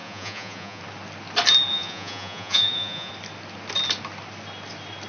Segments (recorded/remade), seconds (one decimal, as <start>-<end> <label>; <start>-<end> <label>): 0.0-0.8 remade; 0.8-1.7 recorded; 1.7-3.1 remade; 3.1-5.1 recorded